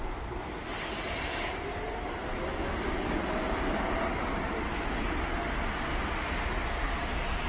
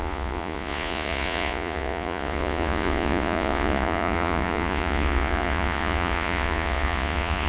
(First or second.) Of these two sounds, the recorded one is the first